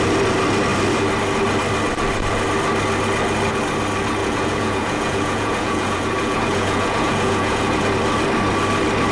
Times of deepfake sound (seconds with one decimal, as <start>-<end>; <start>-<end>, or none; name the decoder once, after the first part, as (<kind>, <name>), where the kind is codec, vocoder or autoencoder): 4.2-7.9 (vocoder, Vocos)